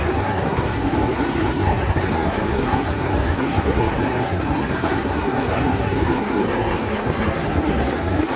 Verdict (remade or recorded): remade